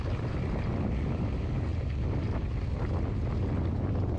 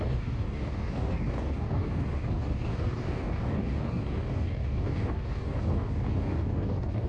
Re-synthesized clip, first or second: second